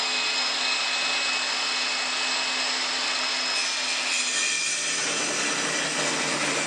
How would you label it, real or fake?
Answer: real